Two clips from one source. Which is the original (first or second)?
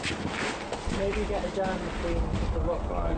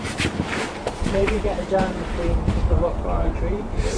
first